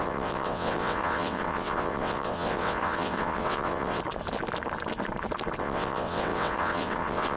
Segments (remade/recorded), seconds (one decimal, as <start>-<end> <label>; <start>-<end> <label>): 0.0-4.0 remade; 4.0-5.6 recorded; 5.6-7.4 remade